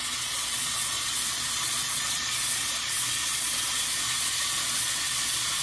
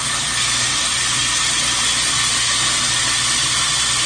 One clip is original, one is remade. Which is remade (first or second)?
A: first